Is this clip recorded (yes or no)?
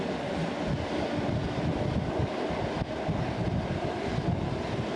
yes